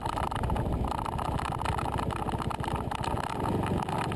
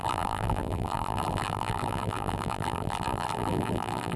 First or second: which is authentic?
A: first